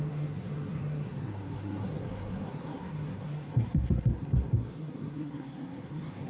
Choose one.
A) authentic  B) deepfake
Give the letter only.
B